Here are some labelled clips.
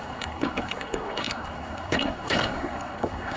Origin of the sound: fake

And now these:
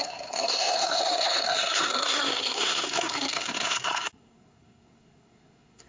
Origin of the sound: fake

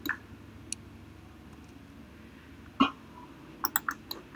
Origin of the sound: real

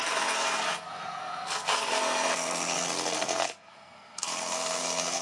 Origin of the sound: fake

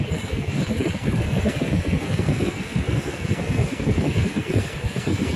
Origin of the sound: fake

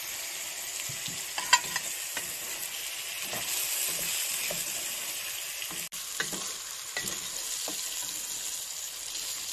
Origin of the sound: real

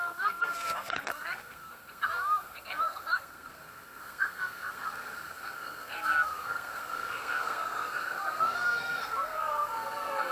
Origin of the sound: fake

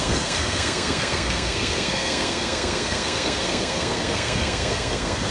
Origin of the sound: fake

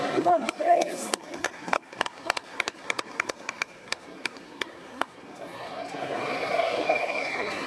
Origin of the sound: fake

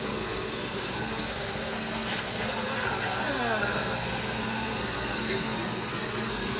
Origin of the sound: fake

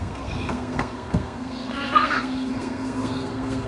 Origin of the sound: fake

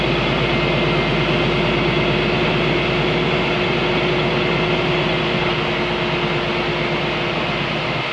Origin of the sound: real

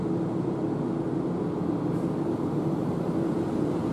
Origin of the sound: real